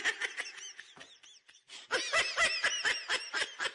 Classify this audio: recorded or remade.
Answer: recorded